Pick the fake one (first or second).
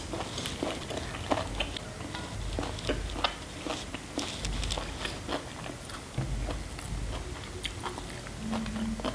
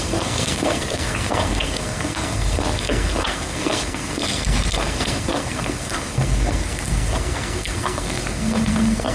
second